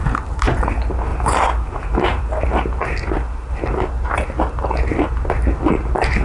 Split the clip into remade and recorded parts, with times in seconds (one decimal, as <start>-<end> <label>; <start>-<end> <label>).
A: 0.0-0.7 remade; 0.7-1.1 recorded; 1.1-2.2 remade; 2.2-6.2 recorded

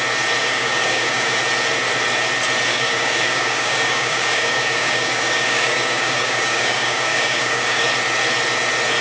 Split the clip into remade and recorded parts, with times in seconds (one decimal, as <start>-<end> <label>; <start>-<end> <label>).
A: 0.0-0.4 recorded; 0.4-1.4 remade; 1.4-2.7 recorded; 2.7-7.9 remade; 7.9-9.0 recorded

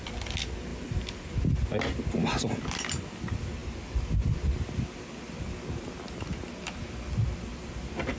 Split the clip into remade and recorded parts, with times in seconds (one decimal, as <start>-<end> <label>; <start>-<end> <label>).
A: 0.0-8.2 recorded